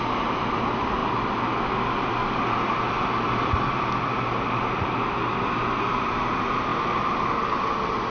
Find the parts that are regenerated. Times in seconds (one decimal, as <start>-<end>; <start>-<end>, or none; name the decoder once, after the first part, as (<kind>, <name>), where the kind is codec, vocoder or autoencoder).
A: none